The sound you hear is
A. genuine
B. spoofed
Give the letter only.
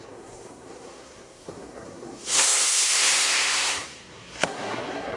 B